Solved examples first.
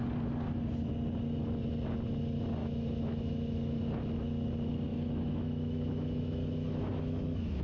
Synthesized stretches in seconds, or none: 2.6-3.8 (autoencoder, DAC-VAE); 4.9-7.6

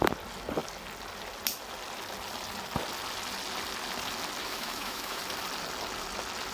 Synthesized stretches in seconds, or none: 4.4-5.2 (autoencoder, DAC-VAE)

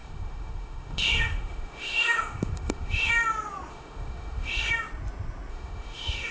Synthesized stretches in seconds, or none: 0.0-3.1 (autoencoder, DAC-VAE); 3.7-4.7; 5.5-6.3

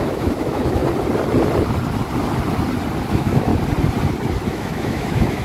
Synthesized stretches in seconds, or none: 0.0-0.8 (autoencoder, DAC-VAE); 3.1-3.5; 4.5-5.4